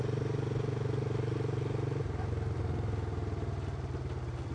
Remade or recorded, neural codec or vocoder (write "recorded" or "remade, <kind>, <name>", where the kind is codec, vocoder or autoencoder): recorded